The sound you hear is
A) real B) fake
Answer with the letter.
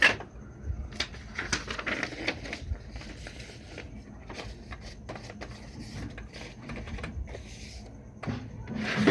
A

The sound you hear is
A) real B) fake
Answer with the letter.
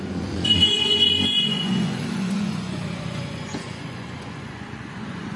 B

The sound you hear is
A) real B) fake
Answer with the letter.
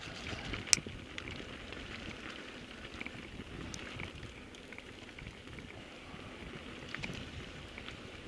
A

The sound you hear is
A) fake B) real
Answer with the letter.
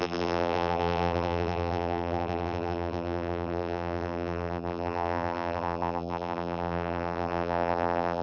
A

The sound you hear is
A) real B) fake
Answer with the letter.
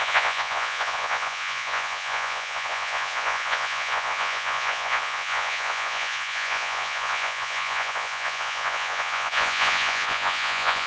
B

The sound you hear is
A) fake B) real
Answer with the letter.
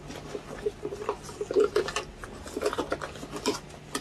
B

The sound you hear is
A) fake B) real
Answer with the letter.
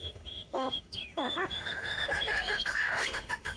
A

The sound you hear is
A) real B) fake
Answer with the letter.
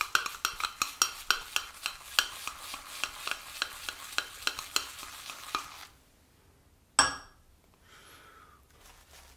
A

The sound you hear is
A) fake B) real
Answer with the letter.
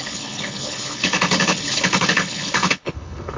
A